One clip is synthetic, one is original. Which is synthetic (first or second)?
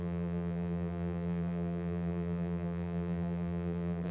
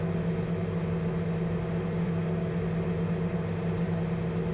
first